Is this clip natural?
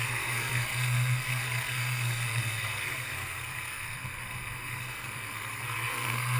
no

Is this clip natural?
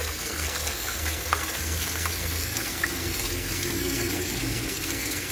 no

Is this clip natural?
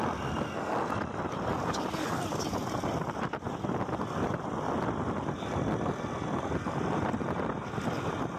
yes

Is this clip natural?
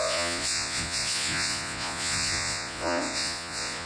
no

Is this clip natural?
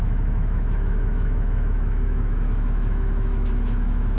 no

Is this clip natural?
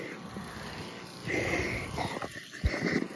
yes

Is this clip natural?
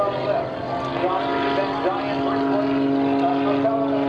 yes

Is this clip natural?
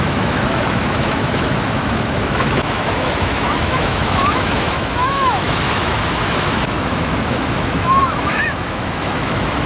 no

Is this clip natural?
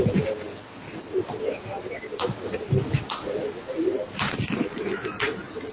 yes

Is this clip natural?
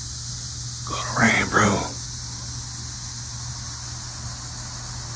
yes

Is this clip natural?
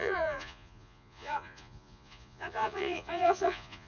no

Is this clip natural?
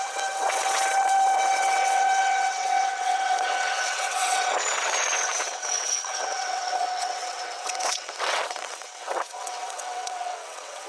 no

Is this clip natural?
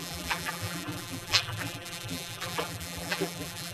no